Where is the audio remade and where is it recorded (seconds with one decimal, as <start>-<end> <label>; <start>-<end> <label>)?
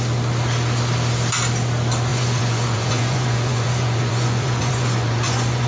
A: 0.0-2.1 recorded; 2.1-5.7 remade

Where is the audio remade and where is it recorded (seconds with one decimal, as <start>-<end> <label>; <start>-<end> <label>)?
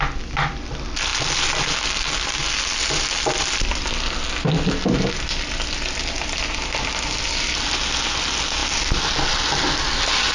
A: 0.0-10.3 recorded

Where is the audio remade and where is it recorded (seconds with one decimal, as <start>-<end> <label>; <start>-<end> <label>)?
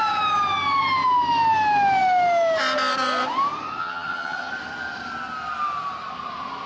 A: 0.0-3.8 recorded; 3.8-4.5 remade; 4.5-6.7 recorded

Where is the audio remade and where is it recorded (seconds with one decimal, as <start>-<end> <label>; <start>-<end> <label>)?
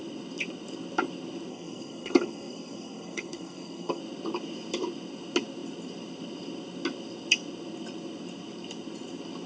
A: 0.0-1.5 recorded; 1.5-4.0 remade; 4.0-9.5 recorded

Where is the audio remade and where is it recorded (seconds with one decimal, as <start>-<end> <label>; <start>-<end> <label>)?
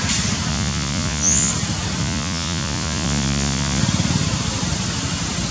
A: 0.0-0.5 recorded; 0.5-1.5 remade; 1.5-2.0 recorded; 2.0-3.8 remade; 3.8-5.5 recorded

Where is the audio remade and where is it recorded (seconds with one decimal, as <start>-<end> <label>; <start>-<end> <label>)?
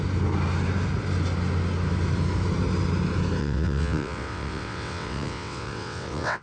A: 0.0-3.4 recorded; 3.4-6.4 remade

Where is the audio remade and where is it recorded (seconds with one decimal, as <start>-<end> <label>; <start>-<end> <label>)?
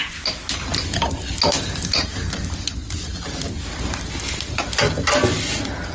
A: 0.0-5.9 recorded